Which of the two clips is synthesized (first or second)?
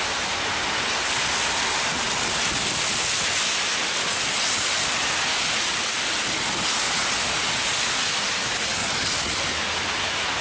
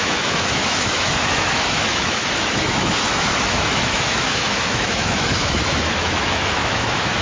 second